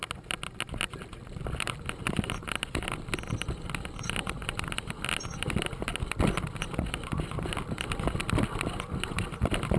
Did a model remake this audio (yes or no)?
no